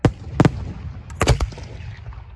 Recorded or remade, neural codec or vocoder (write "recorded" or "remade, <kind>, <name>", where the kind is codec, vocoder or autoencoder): recorded